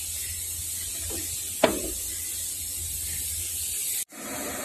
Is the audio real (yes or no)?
yes